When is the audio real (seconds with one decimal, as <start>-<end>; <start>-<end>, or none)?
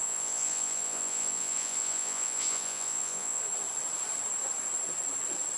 3.4-5.6